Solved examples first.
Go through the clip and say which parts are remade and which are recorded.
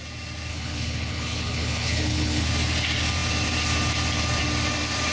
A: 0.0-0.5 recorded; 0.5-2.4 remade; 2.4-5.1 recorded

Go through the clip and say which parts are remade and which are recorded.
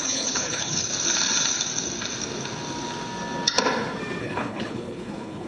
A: 0.0-0.9 remade; 0.9-4.2 recorded; 4.2-5.5 remade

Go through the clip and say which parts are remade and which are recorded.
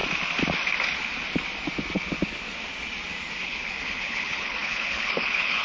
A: 0.0-3.4 recorded; 3.4-5.6 remade